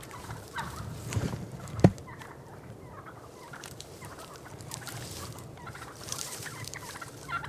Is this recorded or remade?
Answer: remade